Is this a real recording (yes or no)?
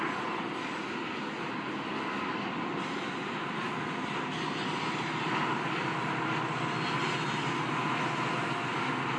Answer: yes